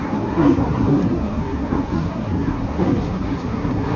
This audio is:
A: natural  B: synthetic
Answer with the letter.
B